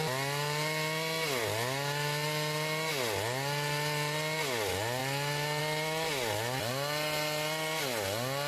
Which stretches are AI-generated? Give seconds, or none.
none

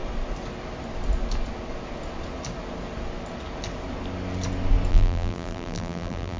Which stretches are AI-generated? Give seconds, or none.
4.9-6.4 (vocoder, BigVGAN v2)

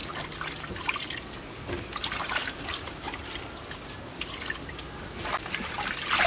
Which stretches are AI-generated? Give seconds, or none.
none

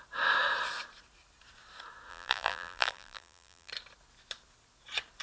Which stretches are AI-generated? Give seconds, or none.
2.1-3.7 (vocoder, BigVGAN v2)

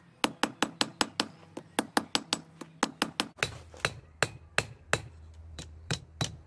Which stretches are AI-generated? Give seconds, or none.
5.4-6.0 (vocoder, BigVGAN v2)

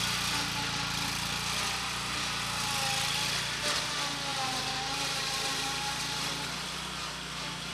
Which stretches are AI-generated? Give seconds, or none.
4.3-6.3 (vocoder, BigVGAN v2)